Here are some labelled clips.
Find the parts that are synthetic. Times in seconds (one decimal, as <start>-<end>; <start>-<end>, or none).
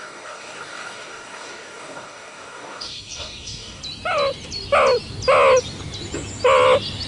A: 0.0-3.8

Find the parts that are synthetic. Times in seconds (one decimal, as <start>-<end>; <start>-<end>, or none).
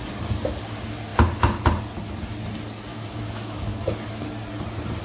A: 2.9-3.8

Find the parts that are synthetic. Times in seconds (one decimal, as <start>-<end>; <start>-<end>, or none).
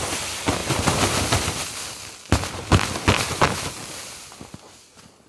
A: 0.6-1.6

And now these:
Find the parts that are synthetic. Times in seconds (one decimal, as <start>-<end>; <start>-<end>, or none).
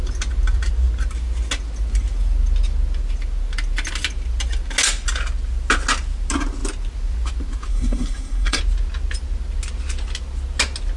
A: 7.7-8.6